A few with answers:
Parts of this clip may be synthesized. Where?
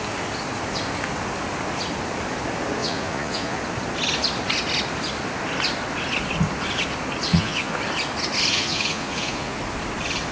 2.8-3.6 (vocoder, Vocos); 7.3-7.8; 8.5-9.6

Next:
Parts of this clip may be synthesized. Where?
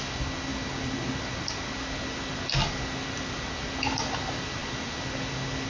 none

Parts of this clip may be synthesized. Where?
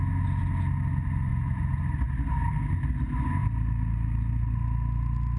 1.3-1.8 (vocoder, Vocos)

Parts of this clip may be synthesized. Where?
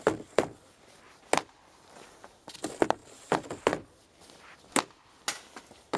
none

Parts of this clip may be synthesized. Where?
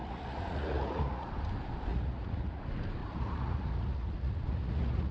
0.0-1.3 (vocoder, Vocos); 1.9-2.6; 3.0-5.1